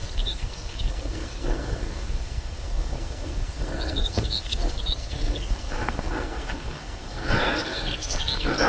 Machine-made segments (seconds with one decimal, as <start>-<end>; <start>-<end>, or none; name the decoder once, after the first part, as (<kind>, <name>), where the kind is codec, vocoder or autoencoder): 0.0-8.7 (codec, SNAC)